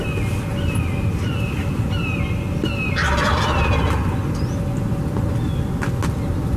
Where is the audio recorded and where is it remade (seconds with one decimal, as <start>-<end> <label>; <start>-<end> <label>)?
0.0-6.6 recorded